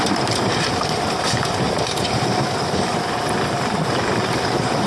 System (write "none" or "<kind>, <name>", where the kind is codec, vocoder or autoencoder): vocoder, BigVGAN v2